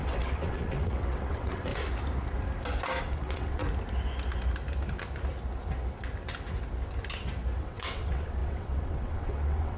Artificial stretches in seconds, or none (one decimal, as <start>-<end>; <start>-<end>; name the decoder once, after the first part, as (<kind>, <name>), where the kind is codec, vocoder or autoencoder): 0.0-1.7 (vocoder, WaveNeXt); 3.0-3.6; 7.6-9.8